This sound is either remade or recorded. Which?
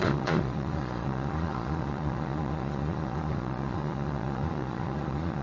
remade